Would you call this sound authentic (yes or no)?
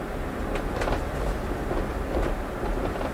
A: yes